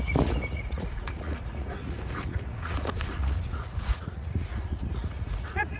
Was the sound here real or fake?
fake